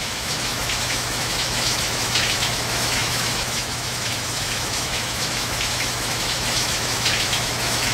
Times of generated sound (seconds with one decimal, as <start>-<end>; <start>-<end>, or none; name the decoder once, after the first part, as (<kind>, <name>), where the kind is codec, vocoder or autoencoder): 0.0-7.9 (autoencoder, DAC-VAE)